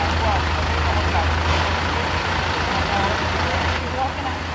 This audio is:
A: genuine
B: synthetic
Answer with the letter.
A